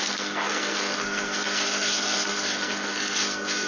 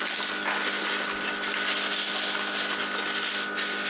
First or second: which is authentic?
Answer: second